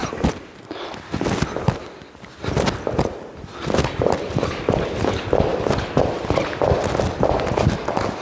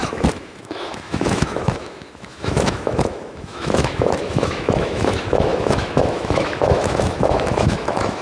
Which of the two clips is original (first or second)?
first